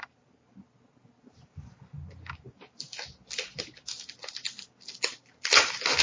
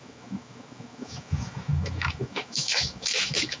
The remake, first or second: second